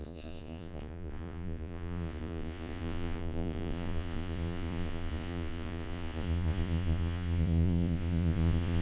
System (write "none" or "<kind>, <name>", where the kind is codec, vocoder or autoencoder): vocoder, Vocos